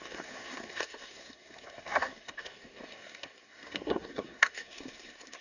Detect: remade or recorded remade